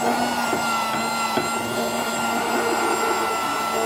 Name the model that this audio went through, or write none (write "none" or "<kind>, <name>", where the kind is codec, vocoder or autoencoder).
none